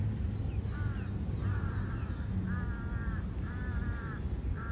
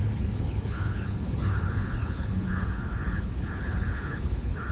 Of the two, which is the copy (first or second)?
second